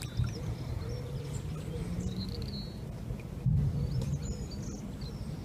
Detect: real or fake real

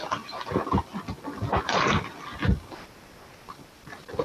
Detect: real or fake real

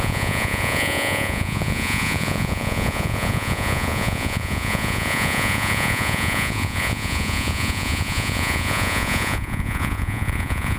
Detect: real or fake fake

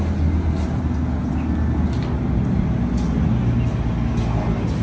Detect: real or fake real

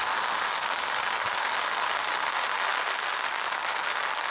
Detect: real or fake real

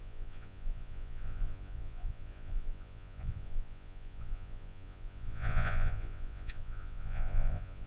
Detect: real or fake fake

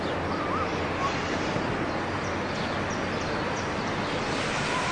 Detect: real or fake real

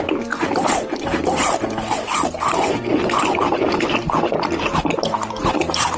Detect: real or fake real